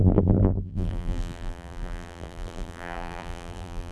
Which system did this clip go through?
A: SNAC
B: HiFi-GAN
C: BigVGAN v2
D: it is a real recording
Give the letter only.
C